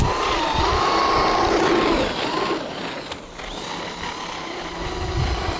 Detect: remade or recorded recorded